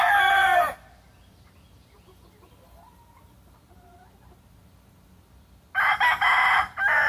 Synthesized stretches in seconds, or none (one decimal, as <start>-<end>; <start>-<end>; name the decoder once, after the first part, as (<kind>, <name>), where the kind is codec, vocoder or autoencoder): none